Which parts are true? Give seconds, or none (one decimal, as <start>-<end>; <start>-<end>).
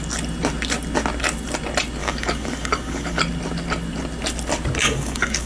0.0-2.0; 3.2-4.8